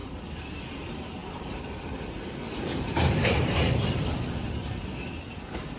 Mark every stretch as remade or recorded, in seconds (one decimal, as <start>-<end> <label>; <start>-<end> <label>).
0.0-0.6 remade; 0.6-1.2 recorded; 1.2-4.7 remade; 4.7-5.8 recorded